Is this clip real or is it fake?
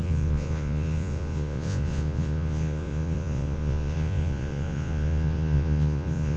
fake